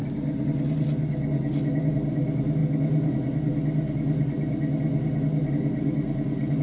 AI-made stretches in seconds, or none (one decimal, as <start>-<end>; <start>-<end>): none